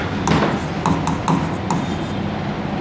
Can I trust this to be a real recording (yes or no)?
yes